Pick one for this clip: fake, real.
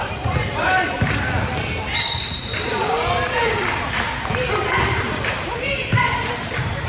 fake